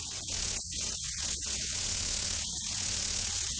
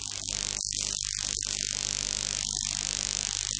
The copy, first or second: first